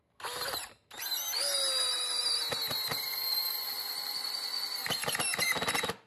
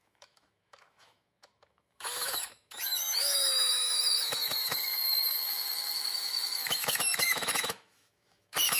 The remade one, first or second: second